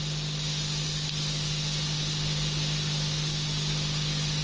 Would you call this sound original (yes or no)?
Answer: yes